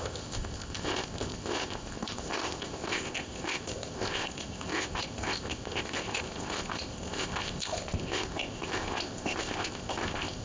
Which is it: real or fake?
fake